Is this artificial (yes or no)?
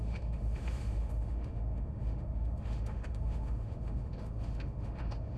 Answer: yes